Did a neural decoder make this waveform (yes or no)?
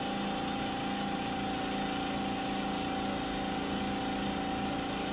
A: no